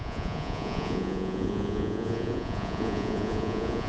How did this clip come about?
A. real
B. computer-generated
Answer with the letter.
B